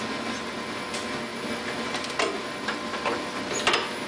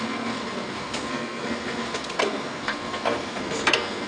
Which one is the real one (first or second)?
first